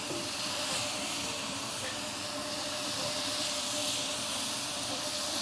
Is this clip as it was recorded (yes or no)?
no